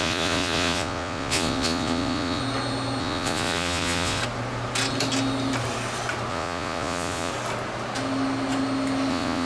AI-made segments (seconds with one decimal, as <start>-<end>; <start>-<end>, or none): 0.0-2.4; 3.0-4.2; 6.3-7.3; 9.1-9.5